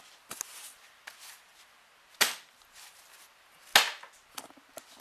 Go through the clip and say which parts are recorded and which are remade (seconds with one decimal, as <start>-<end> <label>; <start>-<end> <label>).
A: 0.0-5.0 recorded